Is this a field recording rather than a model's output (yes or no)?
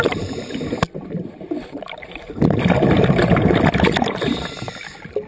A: yes